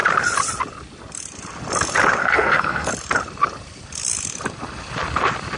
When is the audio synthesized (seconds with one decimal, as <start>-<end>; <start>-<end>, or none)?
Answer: 2.2-2.9